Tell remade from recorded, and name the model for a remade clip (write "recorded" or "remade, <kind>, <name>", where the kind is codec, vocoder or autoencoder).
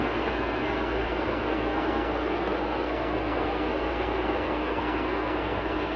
remade, codec, SNAC